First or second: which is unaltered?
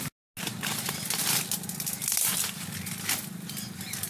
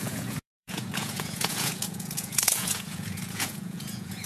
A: first